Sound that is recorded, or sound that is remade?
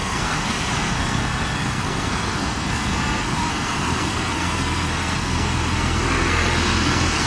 remade